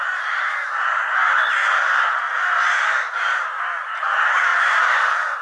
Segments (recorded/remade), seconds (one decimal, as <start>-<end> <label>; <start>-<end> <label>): 0.0-1.2 remade; 1.2-2.9 recorded; 2.9-4.5 remade; 4.5-5.4 recorded